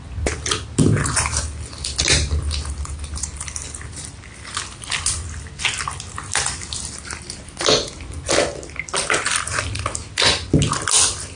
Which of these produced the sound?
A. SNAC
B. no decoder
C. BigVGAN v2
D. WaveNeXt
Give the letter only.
B